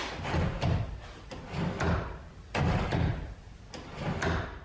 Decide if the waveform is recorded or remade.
recorded